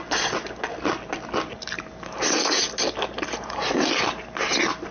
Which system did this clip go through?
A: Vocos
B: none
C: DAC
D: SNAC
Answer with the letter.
B